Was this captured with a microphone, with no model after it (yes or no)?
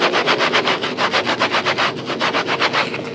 yes